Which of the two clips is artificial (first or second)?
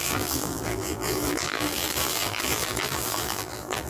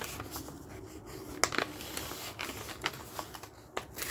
first